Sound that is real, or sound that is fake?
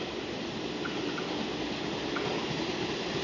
real